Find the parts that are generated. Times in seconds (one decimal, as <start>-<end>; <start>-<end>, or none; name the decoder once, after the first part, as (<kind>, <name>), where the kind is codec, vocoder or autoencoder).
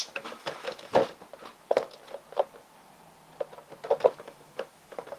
0.0-1.0 (autoencoder, DAC-VAE); 4.1-5.2